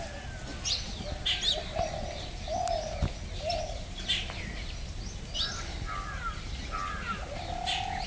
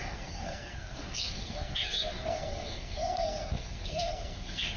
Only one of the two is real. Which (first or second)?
first